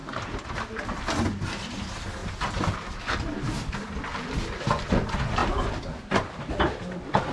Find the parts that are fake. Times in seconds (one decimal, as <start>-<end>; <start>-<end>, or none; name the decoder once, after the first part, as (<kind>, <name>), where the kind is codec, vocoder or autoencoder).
0.0-1.1 (vocoder, BigVGAN v2); 5.4-6.5